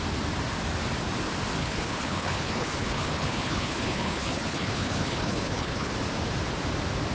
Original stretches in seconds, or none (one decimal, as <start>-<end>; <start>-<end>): 0.0-1.6; 5.9-7.1